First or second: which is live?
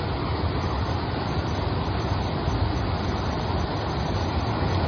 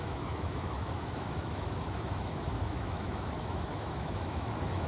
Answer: first